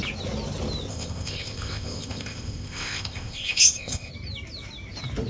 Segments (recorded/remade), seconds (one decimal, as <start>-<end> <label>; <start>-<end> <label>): 0.0-0.9 recorded; 0.9-4.1 remade; 4.1-5.3 recorded